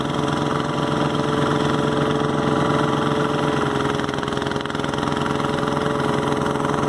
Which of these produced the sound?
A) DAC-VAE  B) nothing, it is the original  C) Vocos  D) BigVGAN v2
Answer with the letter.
B